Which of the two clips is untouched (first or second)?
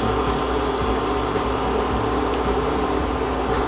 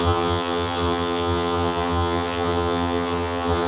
first